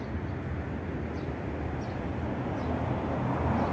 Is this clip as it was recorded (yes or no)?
yes